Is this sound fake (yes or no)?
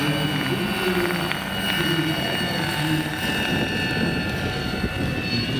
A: no